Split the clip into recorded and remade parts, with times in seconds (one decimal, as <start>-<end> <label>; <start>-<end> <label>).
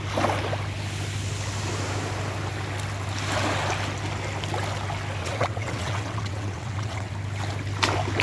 0.0-5.2 recorded; 5.2-7.1 remade; 7.1-8.2 recorded